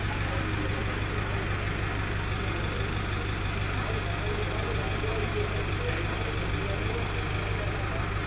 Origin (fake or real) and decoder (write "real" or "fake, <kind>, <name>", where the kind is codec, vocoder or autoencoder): real